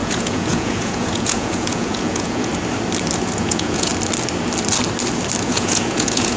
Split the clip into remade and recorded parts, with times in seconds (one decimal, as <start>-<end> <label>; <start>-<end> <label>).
0.0-2.5 remade; 2.5-3.2 recorded; 3.2-3.9 remade; 3.9-5.4 recorded; 5.4-6.4 remade